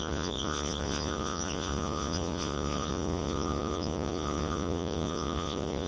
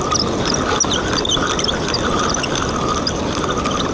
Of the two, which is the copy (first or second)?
first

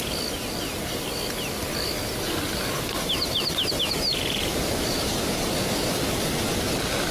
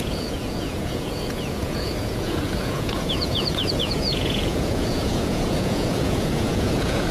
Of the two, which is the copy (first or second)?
second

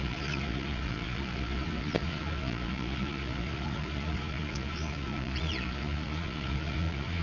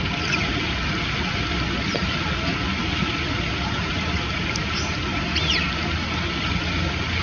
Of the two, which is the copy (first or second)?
first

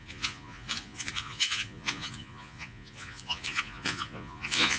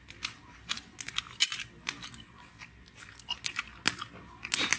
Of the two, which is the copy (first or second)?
first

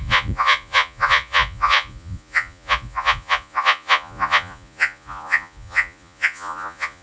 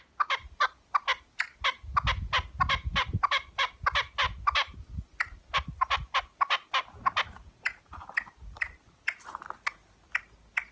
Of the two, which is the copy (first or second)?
first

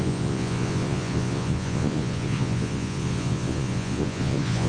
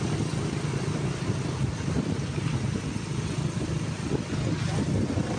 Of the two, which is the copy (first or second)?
first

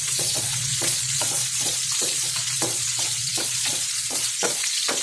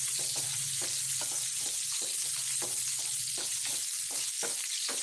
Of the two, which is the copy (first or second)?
first